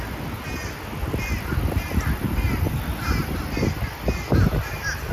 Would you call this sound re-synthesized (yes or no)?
no